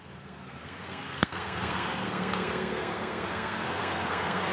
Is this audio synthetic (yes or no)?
yes